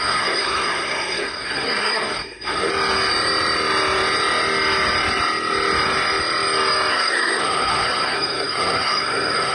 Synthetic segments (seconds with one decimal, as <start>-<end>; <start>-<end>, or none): 0.0-2.7; 6.9-9.5